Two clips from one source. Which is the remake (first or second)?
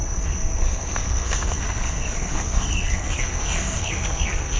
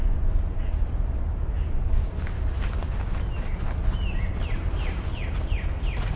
first